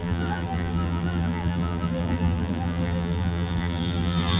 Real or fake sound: fake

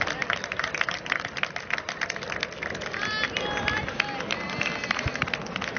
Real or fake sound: real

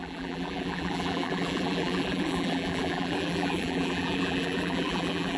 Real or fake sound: fake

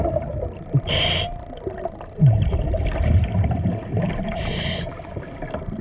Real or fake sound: real